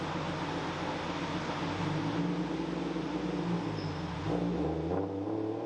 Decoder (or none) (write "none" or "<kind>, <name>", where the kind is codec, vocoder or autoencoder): none